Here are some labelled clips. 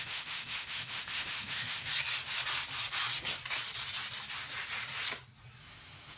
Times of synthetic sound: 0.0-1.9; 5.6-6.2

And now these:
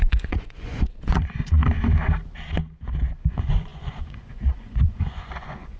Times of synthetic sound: 0.0-1.6; 3.3-5.8

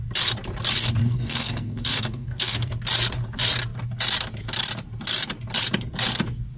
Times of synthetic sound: 1.0-2.7